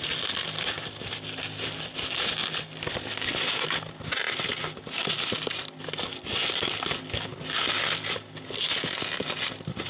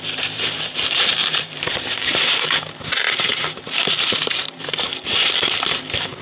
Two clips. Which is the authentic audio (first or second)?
first